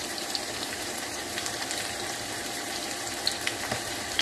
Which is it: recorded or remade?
remade